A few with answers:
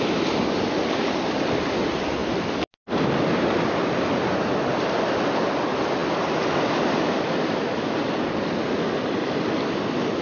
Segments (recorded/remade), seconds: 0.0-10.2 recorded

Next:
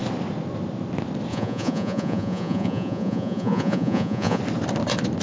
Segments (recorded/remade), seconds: 0.0-1.3 recorded; 1.3-4.4 remade; 4.4-5.2 recorded

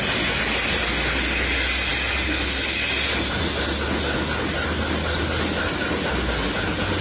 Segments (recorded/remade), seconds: 0.0-7.0 recorded